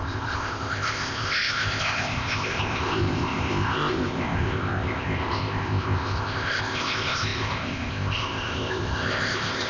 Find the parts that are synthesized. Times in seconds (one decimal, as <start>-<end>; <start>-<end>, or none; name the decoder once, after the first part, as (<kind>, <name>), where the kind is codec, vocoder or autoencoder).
0.0-9.7 (codec, ZipCodec)